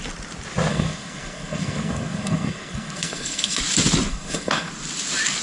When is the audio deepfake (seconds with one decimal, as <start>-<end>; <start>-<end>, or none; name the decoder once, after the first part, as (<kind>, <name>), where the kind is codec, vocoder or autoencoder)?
0.7-3.6 (codec, SNAC); 4.1-4.7

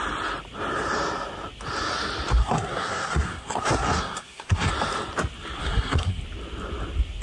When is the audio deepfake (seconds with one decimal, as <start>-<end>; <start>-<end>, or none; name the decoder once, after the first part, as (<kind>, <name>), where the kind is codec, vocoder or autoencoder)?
2.4-4.7 (codec, SNAC); 5.6-6.2

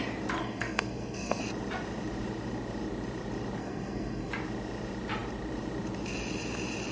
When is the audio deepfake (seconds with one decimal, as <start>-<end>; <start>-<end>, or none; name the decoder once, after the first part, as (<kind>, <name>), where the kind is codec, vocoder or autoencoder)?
0.4-1.4 (codec, SNAC); 3.6-4.3

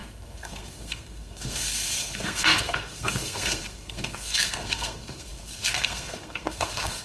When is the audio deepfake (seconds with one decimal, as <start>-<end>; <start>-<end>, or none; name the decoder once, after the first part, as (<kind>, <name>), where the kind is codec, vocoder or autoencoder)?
0.0-7.0 (codec, SNAC)

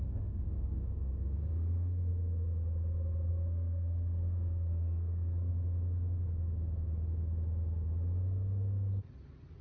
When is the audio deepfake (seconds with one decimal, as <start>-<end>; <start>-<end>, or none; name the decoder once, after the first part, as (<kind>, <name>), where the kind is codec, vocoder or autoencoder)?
0.0-2.1 (codec, SNAC); 3.3-5.5